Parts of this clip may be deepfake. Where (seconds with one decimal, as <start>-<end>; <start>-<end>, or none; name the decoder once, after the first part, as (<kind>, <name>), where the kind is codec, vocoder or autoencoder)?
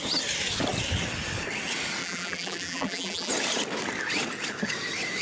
2.0-3.3 (vocoder, BigVGAN v2)